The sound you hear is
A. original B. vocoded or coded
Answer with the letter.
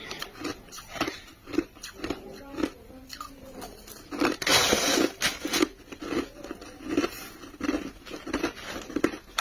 A